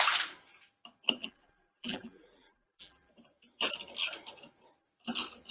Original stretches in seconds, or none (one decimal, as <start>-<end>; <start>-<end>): 0.0-1.2; 3.1-5.5